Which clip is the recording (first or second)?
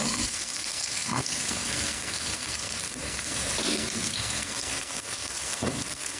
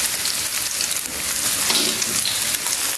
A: second